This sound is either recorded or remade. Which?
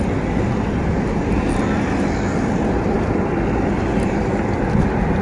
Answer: recorded